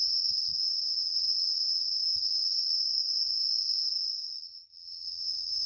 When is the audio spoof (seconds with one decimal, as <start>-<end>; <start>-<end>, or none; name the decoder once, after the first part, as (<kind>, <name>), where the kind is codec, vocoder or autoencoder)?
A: 0.0-2.8 (vocoder, HiFi-GAN); 4.4-5.7

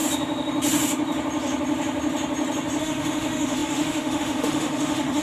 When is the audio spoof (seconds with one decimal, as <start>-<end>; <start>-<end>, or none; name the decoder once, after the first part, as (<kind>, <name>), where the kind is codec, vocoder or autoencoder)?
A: 2.8-5.2 (autoencoder, DAC-VAE)

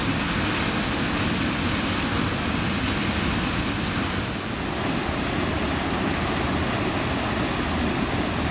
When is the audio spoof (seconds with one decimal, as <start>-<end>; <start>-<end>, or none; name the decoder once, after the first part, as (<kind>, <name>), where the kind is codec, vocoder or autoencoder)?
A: none

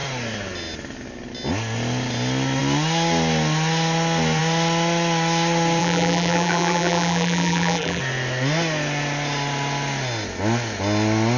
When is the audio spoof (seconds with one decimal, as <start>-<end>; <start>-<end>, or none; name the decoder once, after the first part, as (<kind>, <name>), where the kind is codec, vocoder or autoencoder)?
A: 5.8-8.0 (vocoder, BigVGAN v2)

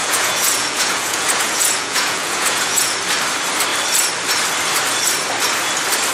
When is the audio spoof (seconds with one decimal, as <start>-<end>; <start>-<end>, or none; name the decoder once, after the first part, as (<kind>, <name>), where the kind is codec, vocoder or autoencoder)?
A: 0.0-2.9 (vocoder, Vocos)

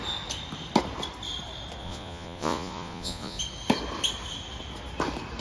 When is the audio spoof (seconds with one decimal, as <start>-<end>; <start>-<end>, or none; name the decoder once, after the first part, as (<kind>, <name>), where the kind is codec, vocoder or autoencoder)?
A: 1.8-3.4 (vocoder, Vocos)